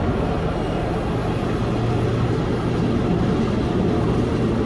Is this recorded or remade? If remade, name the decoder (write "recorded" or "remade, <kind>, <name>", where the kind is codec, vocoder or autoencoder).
recorded